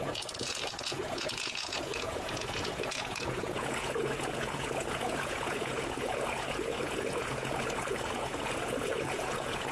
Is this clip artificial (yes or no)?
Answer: yes